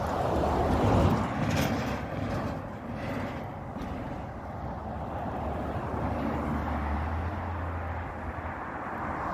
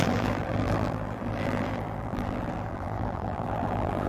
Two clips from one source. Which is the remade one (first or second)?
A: second